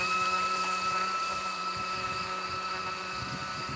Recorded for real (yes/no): no